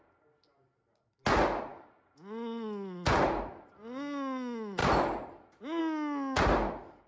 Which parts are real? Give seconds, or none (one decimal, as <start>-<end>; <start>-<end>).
0.0-7.1